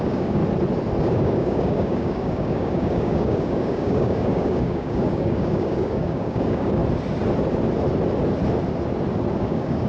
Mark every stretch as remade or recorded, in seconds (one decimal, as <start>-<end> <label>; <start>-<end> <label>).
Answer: 0.0-0.4 remade; 0.4-1.0 recorded; 1.0-6.8 remade; 6.8-9.3 recorded; 9.3-9.9 remade